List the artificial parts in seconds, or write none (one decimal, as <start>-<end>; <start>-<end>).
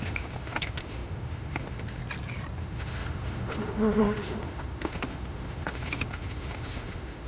0.0-2.0; 2.6-7.3